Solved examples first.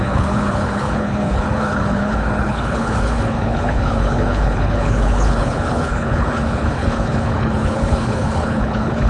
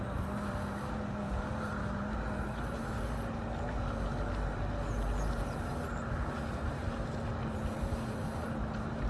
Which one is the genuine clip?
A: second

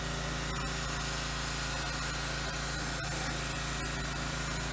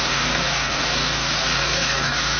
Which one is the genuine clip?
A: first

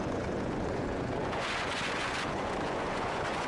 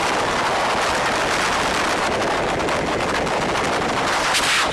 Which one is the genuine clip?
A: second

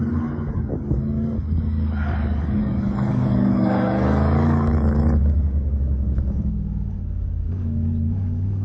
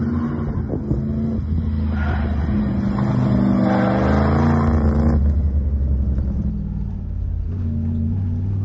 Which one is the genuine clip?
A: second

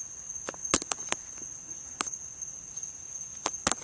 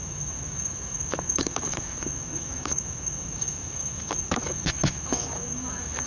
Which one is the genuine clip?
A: first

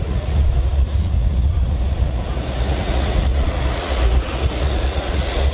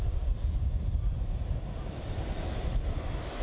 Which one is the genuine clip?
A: second